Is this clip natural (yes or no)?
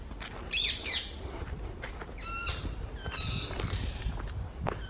yes